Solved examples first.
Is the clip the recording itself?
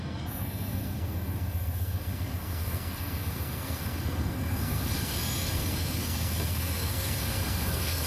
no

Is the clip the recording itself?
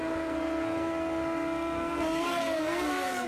no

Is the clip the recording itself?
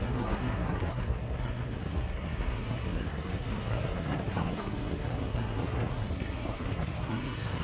no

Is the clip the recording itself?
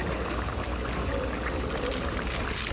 yes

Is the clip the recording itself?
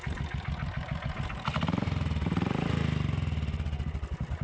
yes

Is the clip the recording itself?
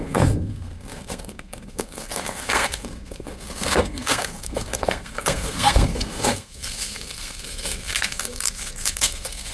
no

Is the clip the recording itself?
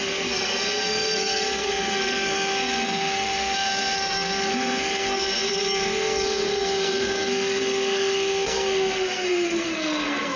no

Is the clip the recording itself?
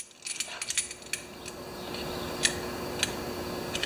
yes